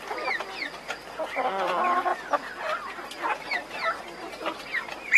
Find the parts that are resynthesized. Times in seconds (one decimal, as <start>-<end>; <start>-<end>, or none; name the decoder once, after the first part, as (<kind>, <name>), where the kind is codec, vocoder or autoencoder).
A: none